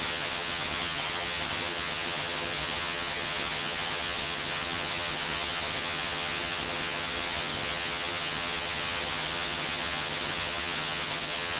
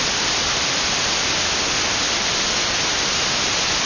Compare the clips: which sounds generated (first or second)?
first